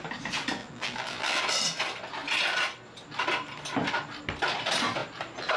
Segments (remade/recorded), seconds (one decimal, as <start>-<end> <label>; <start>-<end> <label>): 0.0-0.6 recorded; 0.6-1.4 remade; 1.4-5.6 recorded